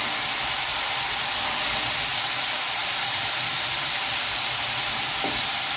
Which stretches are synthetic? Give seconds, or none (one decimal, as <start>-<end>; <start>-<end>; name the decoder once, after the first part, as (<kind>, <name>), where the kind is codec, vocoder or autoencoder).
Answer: 0.7-1.6 (vocoder, BigVGAN v2); 2.8-5.1